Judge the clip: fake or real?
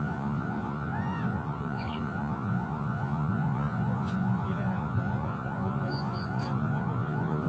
fake